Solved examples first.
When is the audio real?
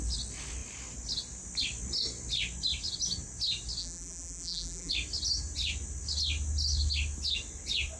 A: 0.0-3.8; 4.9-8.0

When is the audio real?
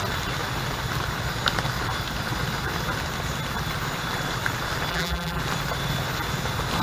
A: 0.0-4.9; 5.4-6.8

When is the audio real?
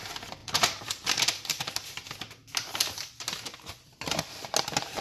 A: 0.0-0.4; 1.6-5.0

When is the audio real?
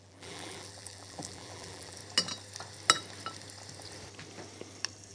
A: 2.0-5.1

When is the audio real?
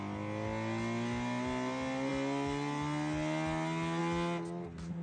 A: 0.0-5.0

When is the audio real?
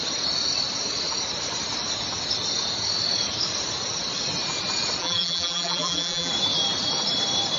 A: 0.0-5.0; 6.3-7.6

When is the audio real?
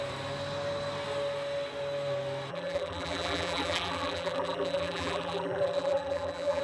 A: 0.0-2.5